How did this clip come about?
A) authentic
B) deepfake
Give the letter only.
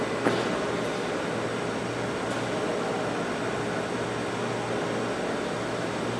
A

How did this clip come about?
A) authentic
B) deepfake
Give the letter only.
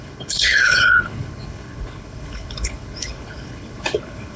B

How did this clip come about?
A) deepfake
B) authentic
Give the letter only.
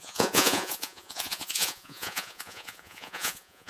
A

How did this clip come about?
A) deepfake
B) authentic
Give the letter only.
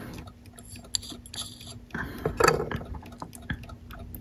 B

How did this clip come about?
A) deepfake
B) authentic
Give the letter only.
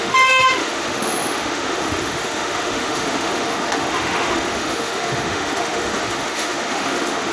A